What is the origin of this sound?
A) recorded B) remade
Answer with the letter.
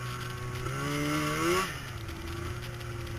A